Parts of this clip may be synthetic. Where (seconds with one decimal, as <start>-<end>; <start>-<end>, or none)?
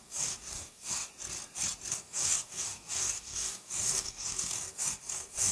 0.0-1.1; 1.9-5.5